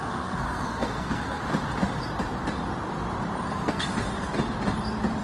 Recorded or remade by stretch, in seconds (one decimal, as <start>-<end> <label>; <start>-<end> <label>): 0.0-1.4 remade; 1.4-3.5 recorded; 3.5-3.9 remade; 3.9-5.2 recorded